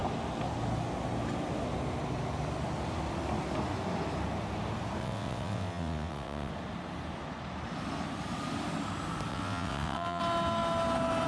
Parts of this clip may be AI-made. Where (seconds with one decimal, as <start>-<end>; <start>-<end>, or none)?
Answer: 5.0-6.5; 9.3-10.2